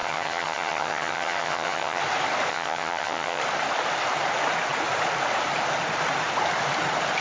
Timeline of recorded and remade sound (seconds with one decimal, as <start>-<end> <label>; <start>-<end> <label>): 0.0-2.0 remade; 2.0-2.5 recorded; 2.5-3.4 remade; 3.4-7.2 recorded